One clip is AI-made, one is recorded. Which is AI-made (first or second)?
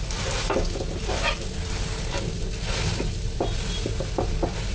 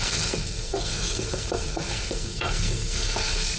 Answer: second